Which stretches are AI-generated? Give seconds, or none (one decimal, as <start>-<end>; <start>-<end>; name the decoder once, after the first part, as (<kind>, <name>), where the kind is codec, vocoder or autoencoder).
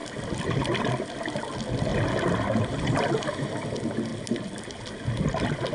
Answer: 0.0-1.4 (vocoder, BigVGAN v2)